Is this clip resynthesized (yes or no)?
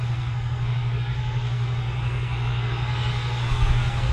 yes